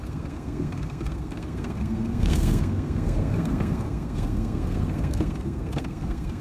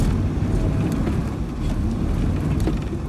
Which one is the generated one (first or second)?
first